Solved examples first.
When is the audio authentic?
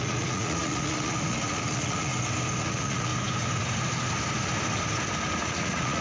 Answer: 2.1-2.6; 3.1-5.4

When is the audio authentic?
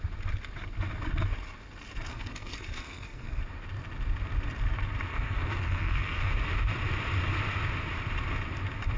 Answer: 0.0-2.1; 3.4-5.1; 6.3-9.0